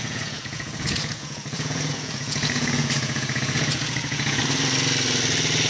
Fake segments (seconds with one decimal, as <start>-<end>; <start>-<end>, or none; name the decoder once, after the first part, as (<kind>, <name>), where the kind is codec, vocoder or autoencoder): 0.0-4.4 (vocoder, Vocos)